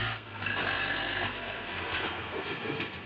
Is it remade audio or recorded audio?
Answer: remade